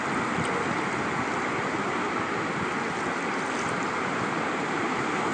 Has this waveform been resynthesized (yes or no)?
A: no